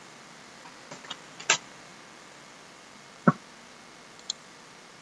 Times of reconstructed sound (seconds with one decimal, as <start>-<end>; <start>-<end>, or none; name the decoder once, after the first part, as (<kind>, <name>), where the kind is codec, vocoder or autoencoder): none